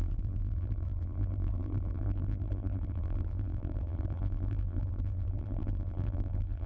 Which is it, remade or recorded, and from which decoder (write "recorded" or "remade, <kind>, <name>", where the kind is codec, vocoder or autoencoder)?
remade, vocoder, BigVGAN v2